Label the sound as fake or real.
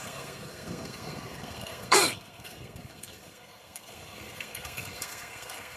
fake